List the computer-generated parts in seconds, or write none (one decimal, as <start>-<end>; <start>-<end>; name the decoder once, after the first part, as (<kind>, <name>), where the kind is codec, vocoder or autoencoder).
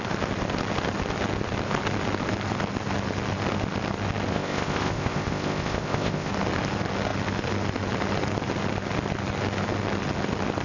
4.3-6.3 (codec, ZipCodec)